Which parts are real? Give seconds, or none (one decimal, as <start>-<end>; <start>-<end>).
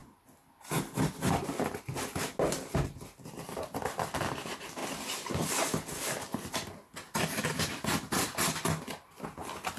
0.0-9.8